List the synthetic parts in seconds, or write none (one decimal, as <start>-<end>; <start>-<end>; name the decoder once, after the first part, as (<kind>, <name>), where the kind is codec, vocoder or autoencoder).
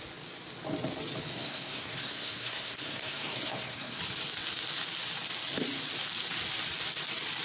1.3-4.0 (codec, SNAC)